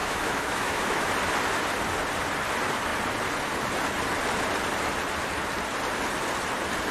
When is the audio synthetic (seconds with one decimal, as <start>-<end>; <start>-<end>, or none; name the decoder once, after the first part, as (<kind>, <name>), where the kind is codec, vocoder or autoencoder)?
0.0-1.1 (autoencoder, DAC-VAE)